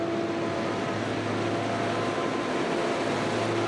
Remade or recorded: recorded